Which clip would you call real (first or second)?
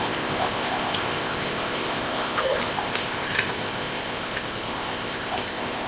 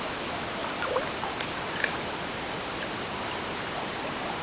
second